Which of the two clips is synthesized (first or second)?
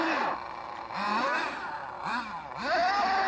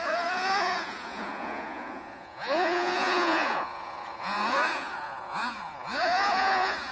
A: second